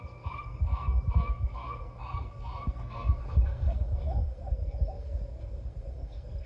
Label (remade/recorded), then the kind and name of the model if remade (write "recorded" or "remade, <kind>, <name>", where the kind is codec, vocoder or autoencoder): remade, codec, SNAC